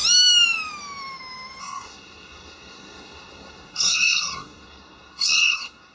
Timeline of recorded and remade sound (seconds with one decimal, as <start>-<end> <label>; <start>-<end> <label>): 0.0-1.6 recorded; 1.6-5.9 remade